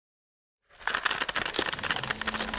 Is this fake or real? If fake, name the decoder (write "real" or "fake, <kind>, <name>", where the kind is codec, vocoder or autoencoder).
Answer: real